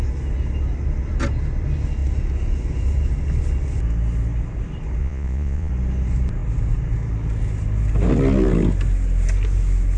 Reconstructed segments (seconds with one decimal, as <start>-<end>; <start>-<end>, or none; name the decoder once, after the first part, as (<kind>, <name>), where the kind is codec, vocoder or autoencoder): 5.0-5.7 (vocoder, Vocos)